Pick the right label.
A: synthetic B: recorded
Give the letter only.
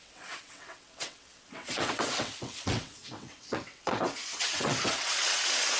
A